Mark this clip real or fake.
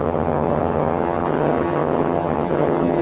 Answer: fake